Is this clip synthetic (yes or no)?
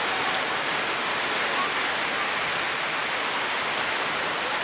no